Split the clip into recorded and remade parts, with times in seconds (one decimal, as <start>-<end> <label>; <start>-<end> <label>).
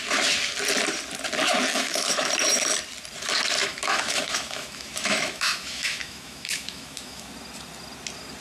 0.0-1.7 recorded; 1.7-2.3 remade; 2.3-3.6 recorded; 3.6-7.3 remade; 7.3-8.4 recorded